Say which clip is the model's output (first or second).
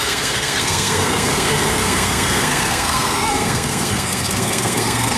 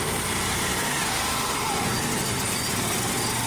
first